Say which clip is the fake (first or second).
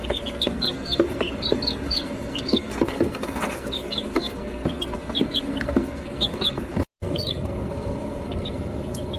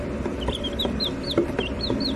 first